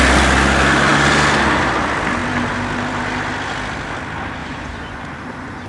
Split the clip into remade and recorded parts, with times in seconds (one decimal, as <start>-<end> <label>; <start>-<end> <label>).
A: 0.0-4.4 recorded; 4.4-5.7 remade